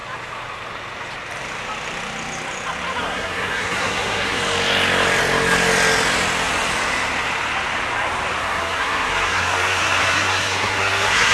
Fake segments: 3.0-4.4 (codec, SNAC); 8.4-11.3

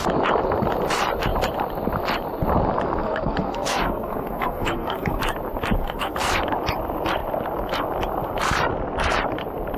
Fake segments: 3.0-5.2 (codec, SNAC); 5.8-6.4

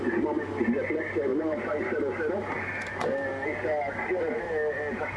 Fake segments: none

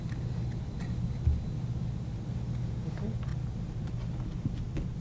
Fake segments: none

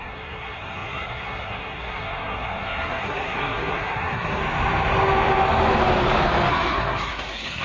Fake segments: 0.0-4.4 (codec, SNAC); 6.5-7.6